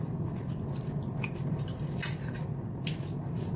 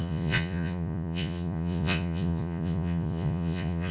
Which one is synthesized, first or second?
second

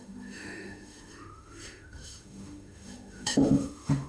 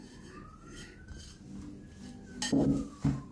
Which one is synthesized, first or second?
first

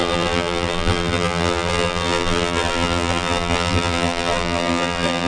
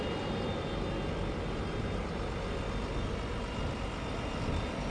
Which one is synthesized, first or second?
first